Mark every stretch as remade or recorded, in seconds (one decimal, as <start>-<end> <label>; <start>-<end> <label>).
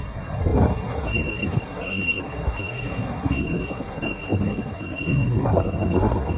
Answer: 0.0-6.4 remade